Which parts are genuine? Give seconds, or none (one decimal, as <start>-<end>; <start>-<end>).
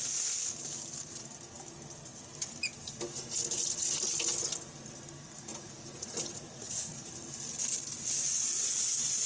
0.0-5.5; 7.1-9.3